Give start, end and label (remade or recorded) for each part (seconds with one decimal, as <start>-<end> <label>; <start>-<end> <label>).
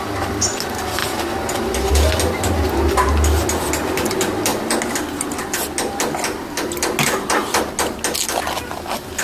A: 0.0-9.2 recorded